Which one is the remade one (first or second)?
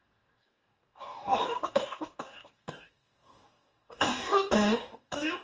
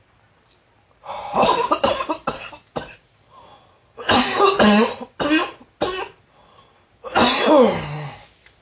first